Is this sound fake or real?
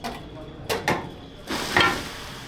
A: real